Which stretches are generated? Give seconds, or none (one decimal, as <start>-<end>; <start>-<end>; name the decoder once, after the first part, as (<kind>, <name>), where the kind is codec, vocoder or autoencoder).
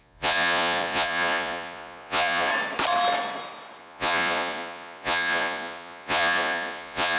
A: 0.0-2.5 (vocoder, Vocos); 3.8-7.2